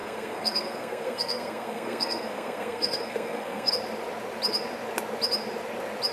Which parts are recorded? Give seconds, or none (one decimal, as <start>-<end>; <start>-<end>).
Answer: 3.7-6.1